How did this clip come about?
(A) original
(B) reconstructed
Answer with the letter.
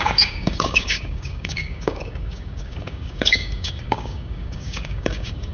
B